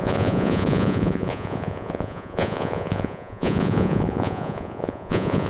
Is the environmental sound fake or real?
fake